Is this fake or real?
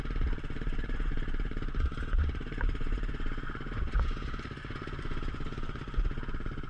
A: fake